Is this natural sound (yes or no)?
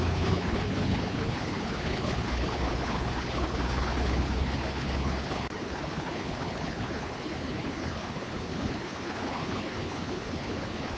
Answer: no